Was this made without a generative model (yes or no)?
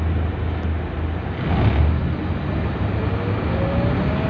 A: yes